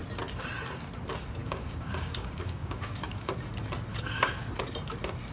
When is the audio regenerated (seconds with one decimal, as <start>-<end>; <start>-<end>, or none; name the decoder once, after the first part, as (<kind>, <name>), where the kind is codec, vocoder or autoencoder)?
1.4-3.3 (codec, DAC); 3.9-4.5

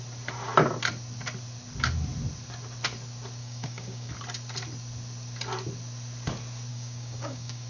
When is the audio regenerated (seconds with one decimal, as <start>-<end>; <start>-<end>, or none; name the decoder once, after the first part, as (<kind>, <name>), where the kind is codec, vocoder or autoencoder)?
3.4-4.1 (codec, DAC); 6.7-7.7

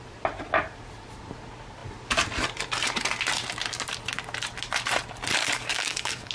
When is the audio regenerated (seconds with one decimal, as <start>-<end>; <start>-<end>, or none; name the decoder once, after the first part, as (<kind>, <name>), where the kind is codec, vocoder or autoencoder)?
5.4-6.3 (codec, DAC)